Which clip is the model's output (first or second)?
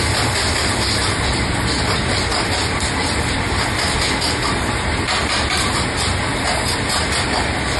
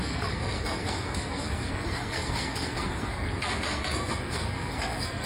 second